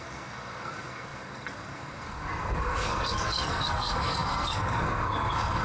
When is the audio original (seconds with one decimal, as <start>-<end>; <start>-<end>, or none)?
none